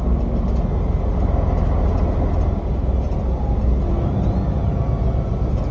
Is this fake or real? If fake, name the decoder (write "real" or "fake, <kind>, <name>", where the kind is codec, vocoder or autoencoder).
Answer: real